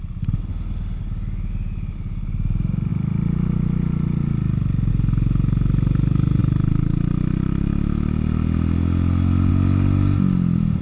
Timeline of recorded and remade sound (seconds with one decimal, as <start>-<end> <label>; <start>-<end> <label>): 0.0-0.5 recorded; 0.5-1.0 remade; 1.0-10.8 recorded